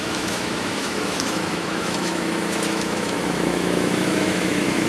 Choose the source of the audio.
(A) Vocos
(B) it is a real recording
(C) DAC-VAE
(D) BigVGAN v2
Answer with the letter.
C